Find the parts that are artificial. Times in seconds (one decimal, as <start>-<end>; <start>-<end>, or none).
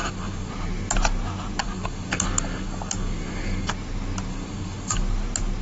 0.0-0.5; 1.6-3.7; 4.3-5.0